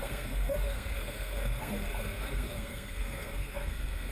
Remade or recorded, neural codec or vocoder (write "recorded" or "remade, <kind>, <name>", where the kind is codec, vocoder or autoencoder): remade, codec, SNAC